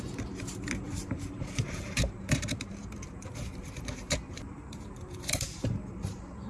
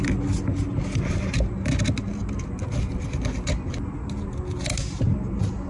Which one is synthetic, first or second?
first